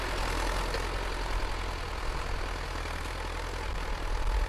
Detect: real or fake real